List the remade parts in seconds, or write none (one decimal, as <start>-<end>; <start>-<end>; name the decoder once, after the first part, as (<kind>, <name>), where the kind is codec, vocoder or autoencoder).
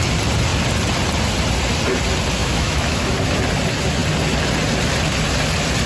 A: 2.4-3.1 (autoencoder, DAC-VAE)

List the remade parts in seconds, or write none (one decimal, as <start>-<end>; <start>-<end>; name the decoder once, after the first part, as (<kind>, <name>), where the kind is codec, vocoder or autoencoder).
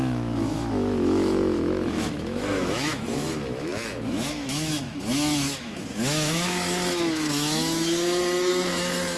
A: 0.0-9.2 (autoencoder, DAC-VAE)